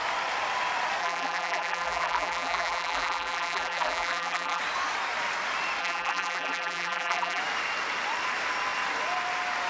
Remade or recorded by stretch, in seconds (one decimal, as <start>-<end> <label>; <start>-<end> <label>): 0.0-1.0 recorded; 1.0-4.6 remade; 4.6-5.8 recorded; 5.8-7.4 remade; 7.4-9.7 recorded